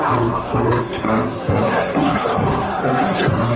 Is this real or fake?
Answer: fake